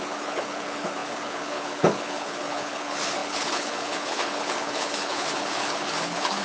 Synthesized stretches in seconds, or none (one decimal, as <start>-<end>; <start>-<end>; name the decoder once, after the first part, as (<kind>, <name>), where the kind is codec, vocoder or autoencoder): 0.0-6.4 (codec, HILCodec)